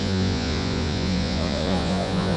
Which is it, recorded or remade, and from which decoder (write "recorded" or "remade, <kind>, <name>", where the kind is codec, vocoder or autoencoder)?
remade, vocoder, Vocos